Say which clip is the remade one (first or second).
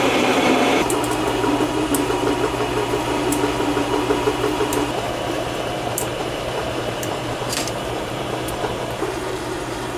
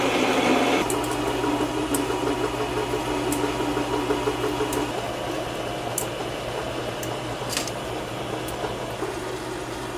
first